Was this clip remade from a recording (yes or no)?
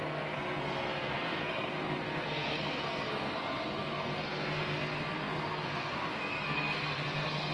yes